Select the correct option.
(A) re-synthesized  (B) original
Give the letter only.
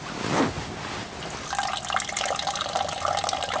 B